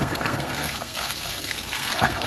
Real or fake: fake